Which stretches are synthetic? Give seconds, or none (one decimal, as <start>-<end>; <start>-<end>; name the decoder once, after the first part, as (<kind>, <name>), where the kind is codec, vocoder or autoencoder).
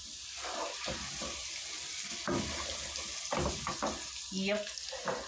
none